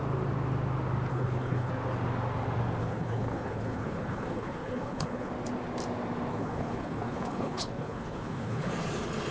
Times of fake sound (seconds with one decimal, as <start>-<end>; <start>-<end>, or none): 1.1-1.7; 2.8-5.3; 6.3-8.7